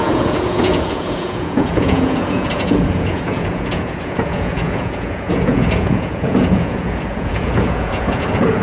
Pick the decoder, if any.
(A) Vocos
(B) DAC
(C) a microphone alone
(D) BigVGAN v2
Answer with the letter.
A